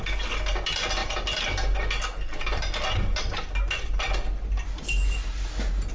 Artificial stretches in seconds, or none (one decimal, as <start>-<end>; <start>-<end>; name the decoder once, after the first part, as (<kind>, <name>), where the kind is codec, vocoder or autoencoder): none